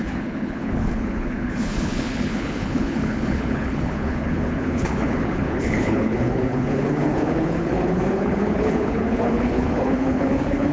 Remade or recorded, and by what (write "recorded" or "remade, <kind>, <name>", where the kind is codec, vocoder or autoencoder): remade, codec, HILCodec